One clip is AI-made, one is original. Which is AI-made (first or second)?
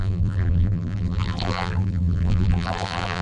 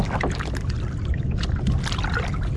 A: first